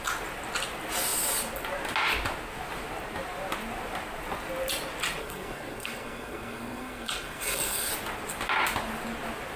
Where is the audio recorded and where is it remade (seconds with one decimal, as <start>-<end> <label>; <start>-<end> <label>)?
0.0-5.2 recorded; 5.2-7.9 remade; 7.9-9.6 recorded